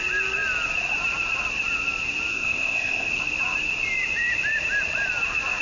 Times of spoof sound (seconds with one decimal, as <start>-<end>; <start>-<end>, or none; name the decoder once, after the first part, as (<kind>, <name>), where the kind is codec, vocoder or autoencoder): 2.3-3.1 (codec, ZipCodec)